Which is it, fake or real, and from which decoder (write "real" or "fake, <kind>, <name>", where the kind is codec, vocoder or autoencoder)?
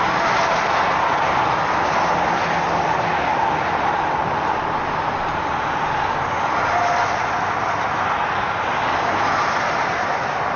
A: real